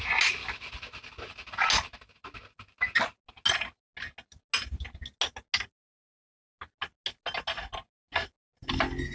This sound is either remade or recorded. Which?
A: recorded